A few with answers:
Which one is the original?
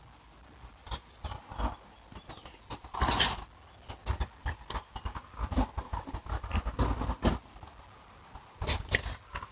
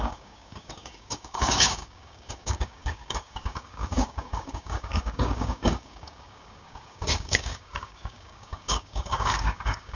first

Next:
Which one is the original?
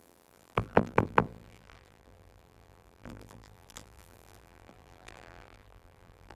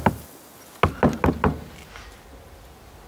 second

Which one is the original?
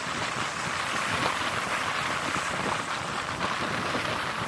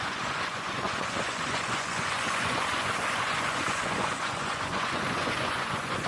first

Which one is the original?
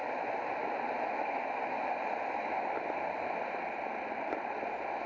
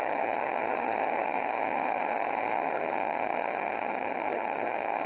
first